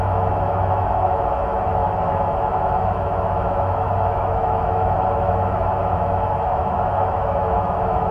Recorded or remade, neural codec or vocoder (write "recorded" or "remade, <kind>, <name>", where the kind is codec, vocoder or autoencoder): remade, autoencoder, DAC-VAE